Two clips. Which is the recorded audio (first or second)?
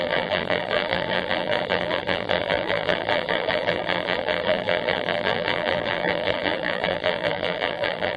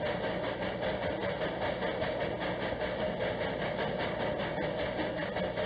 second